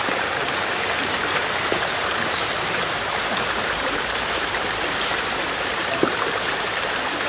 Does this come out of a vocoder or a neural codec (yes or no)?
yes